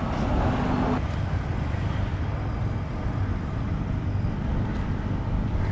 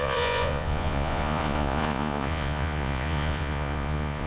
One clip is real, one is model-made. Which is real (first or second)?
first